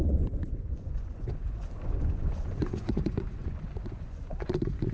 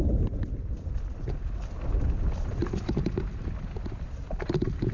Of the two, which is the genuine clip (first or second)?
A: second